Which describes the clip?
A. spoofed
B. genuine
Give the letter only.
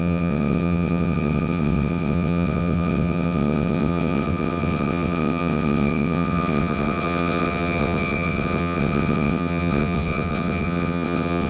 A